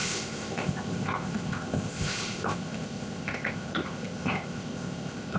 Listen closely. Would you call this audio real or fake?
fake